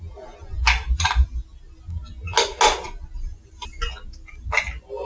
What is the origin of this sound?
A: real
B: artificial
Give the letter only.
A